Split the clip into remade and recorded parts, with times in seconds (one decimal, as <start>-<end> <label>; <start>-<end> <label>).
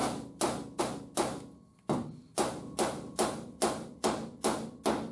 0.0-5.1 recorded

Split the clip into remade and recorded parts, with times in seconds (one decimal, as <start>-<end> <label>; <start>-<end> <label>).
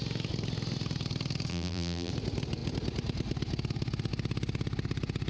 0.0-1.5 recorded; 1.5-2.1 remade; 2.1-5.3 recorded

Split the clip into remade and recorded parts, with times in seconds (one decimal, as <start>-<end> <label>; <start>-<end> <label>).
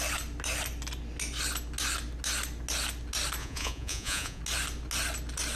0.0-3.4 recorded; 3.4-4.4 remade; 4.4-5.6 recorded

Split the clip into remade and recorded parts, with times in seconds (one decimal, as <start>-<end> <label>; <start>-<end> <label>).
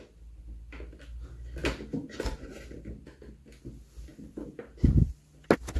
0.0-5.8 recorded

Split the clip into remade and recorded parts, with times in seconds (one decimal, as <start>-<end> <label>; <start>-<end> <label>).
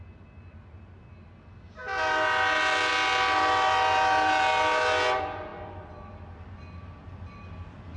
0.0-8.0 recorded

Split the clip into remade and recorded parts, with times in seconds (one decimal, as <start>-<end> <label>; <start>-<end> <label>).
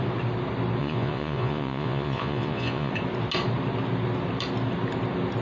0.0-0.8 recorded; 0.8-2.9 remade; 2.9-5.4 recorded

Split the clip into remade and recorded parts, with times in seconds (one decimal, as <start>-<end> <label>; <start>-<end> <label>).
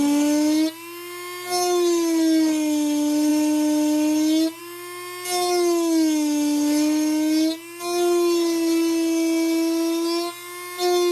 0.0-11.1 recorded